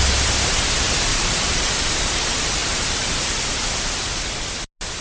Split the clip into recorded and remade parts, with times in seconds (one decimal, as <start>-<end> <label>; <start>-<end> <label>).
0.0-1.1 recorded; 1.1-1.7 remade; 1.7-2.6 recorded; 2.6-3.4 remade; 3.4-5.0 recorded